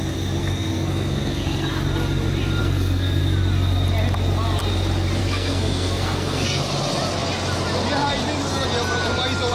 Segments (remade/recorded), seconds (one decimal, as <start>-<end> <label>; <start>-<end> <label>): 0.0-0.4 recorded; 0.4-1.7 remade; 1.7-2.6 recorded; 2.6-3.2 remade; 3.2-5.2 recorded; 5.2-6.6 remade; 6.6-9.5 recorded